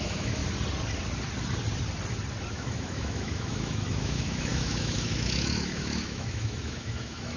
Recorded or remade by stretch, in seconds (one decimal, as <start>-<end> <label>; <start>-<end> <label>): 0.0-0.4 remade; 0.4-2.5 recorded; 2.5-7.4 remade